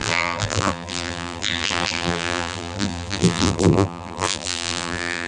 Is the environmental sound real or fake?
fake